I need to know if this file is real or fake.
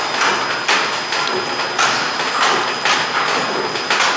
real